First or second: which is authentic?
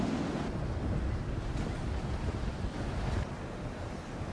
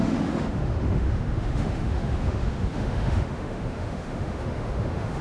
first